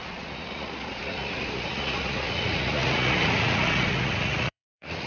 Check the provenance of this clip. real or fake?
fake